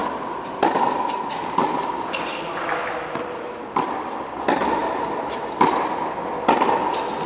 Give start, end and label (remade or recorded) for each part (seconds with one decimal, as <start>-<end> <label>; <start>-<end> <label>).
0.0-7.3 recorded